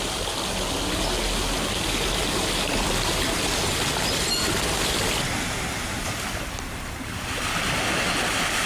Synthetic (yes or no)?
no